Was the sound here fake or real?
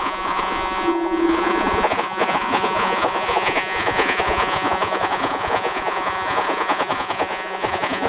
fake